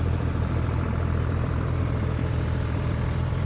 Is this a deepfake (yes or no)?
yes